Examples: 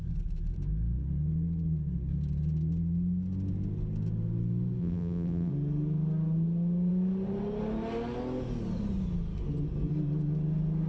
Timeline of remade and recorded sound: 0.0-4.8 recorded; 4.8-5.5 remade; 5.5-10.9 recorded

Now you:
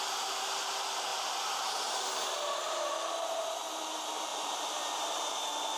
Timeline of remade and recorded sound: 0.0-4.3 recorded; 4.3-5.2 remade; 5.2-5.8 recorded